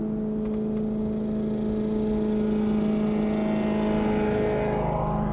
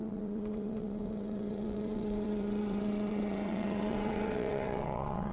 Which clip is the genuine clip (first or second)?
first